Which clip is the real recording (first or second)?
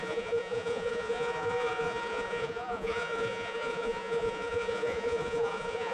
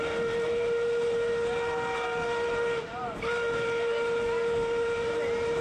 second